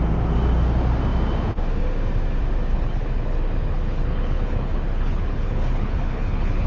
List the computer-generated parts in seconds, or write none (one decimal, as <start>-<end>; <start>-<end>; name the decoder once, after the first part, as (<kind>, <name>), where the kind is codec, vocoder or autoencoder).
2.7-6.7 (codec, HILCodec)